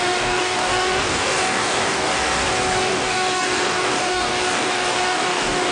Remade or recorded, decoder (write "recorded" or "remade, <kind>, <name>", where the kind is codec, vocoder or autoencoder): remade, codec, DAC